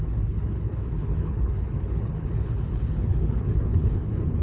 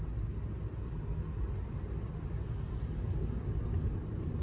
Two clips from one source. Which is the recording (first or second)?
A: second